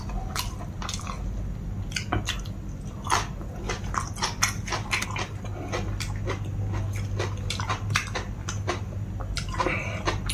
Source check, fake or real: real